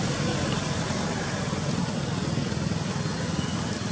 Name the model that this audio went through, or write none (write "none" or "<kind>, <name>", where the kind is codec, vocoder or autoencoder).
none